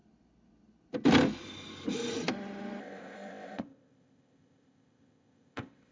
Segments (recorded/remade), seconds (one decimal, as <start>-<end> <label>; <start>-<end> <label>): 0.0-2.8 recorded; 2.8-5.9 remade